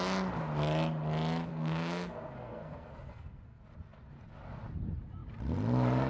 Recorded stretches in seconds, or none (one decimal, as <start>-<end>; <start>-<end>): 0.0-1.5; 3.6-6.1